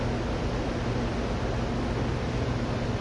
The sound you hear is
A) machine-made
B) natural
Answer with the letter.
B